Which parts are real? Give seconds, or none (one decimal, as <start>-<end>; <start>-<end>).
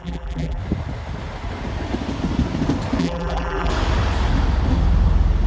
0.6-3.0; 3.7-5.5